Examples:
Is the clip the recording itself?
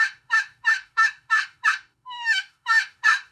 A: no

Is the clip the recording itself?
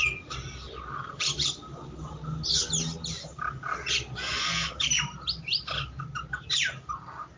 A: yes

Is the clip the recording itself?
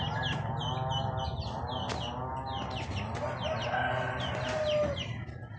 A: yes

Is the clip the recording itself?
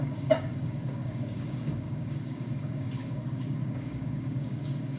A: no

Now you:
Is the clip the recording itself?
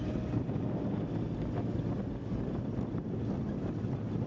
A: yes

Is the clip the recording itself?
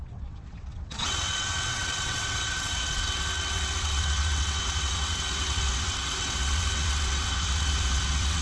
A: no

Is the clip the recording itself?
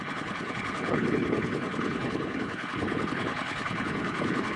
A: no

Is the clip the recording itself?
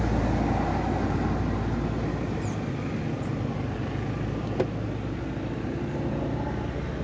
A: yes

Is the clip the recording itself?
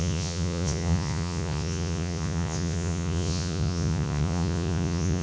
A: no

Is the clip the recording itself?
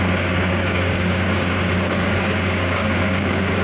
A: no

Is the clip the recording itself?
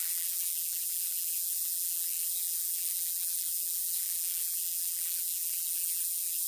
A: no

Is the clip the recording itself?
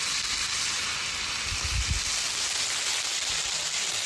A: yes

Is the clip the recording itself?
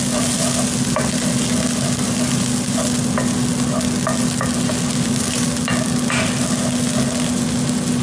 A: yes